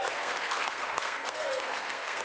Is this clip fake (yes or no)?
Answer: yes